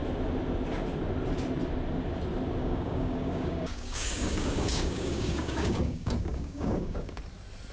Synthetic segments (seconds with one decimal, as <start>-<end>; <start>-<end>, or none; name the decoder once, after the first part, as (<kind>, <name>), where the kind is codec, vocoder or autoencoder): 2.6-7.2 (codec, DAC)